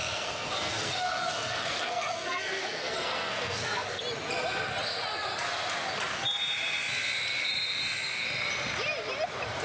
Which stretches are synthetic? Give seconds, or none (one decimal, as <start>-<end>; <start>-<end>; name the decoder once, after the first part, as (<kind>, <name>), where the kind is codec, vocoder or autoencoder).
0.0-4.0 (codec, SNAC)